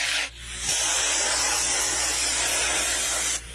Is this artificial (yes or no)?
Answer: no